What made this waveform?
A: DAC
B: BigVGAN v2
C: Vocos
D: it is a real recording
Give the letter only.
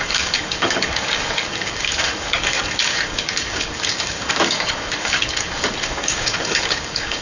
A